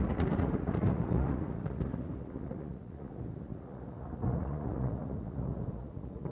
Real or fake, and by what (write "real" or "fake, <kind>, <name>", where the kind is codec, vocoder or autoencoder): fake, vocoder, Vocos